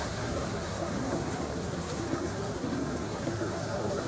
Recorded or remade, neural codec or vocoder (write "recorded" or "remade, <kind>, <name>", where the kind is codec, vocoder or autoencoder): remade, codec, SNAC